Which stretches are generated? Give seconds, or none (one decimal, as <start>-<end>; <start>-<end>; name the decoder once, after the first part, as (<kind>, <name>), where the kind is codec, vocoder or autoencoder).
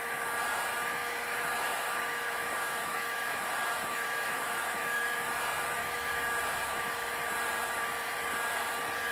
1.0-5.3 (autoencoder, DAC-VAE); 5.8-7.1